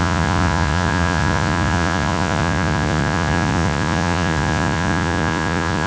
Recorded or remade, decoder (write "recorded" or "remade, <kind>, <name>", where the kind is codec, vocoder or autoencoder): remade, vocoder, Vocos